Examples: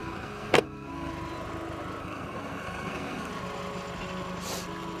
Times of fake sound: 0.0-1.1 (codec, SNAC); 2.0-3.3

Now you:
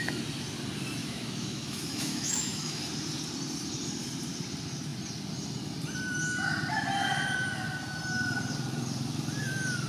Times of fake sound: 1.0-2.8 (autoencoder, DAC-VAE)

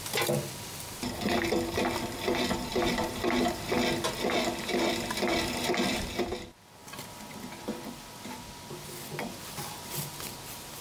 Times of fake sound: 2.7-3.6 (vocoder, BigVGAN v2)

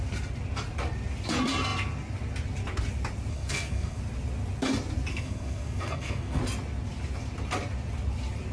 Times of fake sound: 3.3-4.0 (codec, SNAC); 5.1-6.4

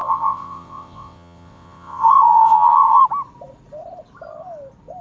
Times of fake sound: 0.0-3.0 (vocoder, WaveNeXt)

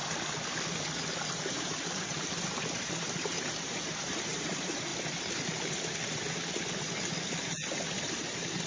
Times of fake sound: 1.1-2.1 (vocoder, BigVGAN v2); 3.2-4.9; 8.1-8.7